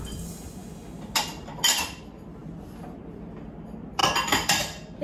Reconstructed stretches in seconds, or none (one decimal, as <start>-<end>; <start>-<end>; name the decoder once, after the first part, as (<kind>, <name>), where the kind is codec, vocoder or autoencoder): none